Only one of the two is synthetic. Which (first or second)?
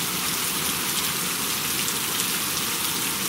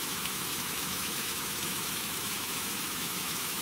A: second